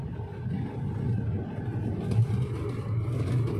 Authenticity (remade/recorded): recorded